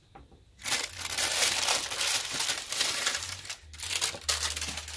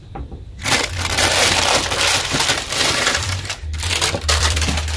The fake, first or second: second